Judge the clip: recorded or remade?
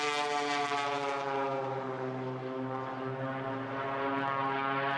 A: recorded